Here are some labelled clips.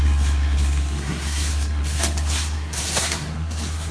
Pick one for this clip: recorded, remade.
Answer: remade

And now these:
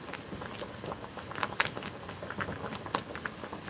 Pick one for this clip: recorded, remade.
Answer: recorded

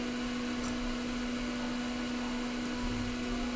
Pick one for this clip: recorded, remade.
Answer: recorded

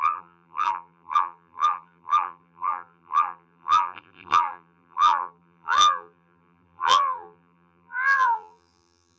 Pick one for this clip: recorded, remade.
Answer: remade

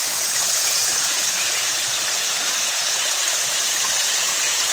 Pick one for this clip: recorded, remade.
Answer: remade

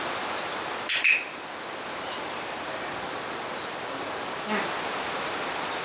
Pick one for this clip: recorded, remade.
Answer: remade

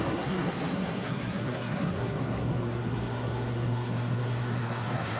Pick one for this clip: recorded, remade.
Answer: remade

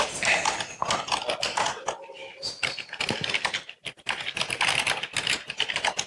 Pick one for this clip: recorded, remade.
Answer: recorded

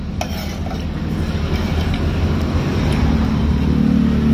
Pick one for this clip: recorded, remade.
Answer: recorded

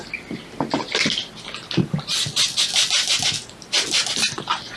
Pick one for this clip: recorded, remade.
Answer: recorded